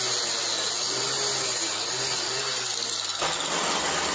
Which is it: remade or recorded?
recorded